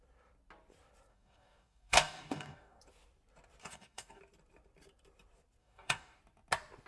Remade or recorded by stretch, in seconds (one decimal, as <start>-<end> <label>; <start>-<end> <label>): 0.0-1.1 recorded; 1.1-2.8 remade; 2.8-3.6 recorded; 3.6-4.2 remade; 4.2-5.6 recorded; 5.6-6.2 remade; 6.2-6.9 recorded